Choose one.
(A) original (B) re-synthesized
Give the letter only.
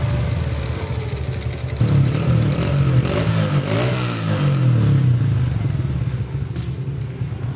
A